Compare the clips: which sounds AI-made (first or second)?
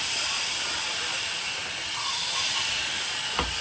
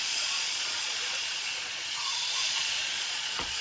second